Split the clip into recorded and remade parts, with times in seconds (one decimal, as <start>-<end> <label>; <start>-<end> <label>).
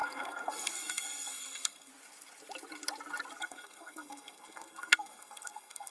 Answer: 0.0-1.9 remade; 1.9-3.4 recorded; 3.4-5.9 remade